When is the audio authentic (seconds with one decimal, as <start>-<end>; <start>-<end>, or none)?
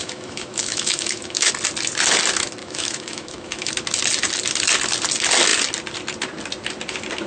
1.5-2.6; 3.7-7.3